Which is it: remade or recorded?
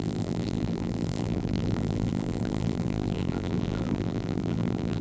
remade